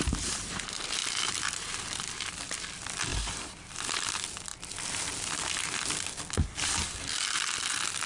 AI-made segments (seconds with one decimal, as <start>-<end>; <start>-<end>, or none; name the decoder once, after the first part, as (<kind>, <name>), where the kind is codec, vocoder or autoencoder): 1.0-2.3 (vocoder, BigVGAN v2); 3.1-3.7; 4.5-5.1